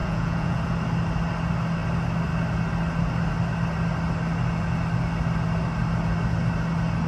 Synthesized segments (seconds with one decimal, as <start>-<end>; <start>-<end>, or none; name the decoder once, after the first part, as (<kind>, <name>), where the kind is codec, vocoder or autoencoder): 0.0-0.6 (vocoder, Vocos)